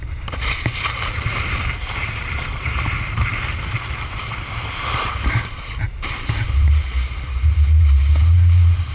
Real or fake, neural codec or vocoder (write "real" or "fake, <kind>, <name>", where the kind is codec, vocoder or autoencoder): fake, vocoder, BigVGAN v2